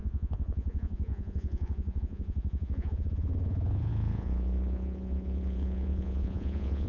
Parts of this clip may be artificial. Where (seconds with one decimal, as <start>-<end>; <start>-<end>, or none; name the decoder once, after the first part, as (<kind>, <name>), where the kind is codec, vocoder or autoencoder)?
0.0-6.9 (vocoder, Vocos)